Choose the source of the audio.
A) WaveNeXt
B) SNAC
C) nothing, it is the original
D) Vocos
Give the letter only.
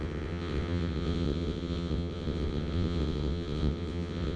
A